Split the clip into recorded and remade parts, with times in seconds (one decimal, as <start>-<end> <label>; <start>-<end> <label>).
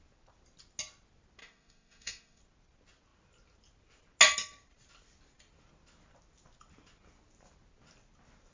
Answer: 0.0-1.4 recorded; 1.4-2.4 remade; 2.4-8.5 recorded